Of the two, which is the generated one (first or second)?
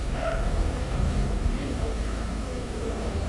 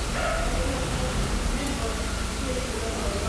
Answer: first